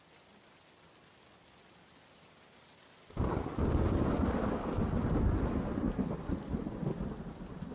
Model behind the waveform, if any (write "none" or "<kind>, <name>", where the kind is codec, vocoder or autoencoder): none